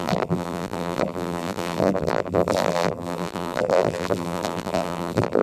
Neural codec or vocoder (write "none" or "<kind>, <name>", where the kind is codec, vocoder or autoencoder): vocoder, BigVGAN v2